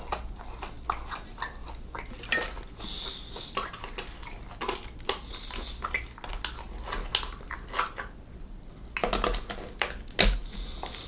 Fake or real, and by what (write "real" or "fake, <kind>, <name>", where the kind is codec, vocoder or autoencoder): real